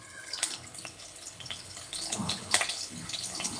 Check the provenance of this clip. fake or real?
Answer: fake